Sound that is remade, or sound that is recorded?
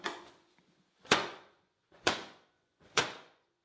remade